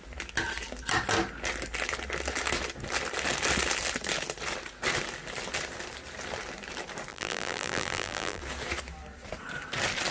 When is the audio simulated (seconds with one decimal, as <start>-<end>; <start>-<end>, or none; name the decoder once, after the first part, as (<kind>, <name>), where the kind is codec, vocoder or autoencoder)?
7.1-8.4 (vocoder, BigVGAN v2)